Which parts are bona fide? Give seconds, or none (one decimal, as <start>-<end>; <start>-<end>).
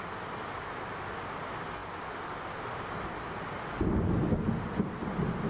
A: 0.0-5.5